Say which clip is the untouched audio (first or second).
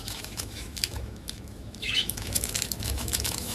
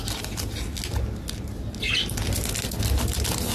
second